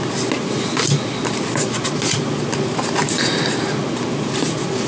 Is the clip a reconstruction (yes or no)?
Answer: no